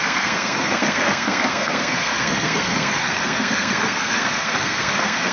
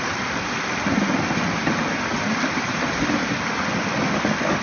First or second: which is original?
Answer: second